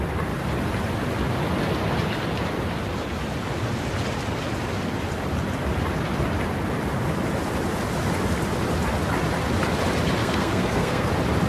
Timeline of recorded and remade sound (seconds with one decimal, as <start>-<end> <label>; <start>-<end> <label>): 0.0-10.2 recorded; 10.2-11.1 remade; 11.1-11.5 recorded